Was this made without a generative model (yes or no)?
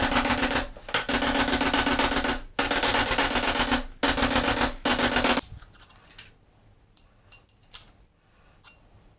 yes